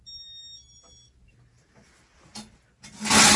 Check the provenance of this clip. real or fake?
real